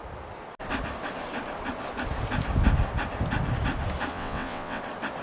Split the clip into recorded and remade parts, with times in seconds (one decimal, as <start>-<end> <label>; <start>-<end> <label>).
0.0-4.1 recorded; 4.1-4.8 remade; 4.8-5.2 recorded